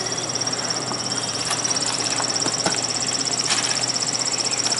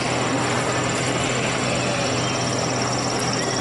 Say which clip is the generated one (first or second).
first